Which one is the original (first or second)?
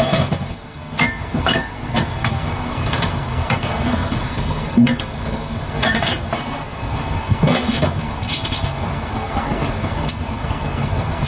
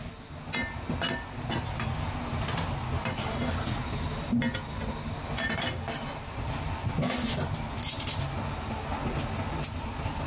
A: second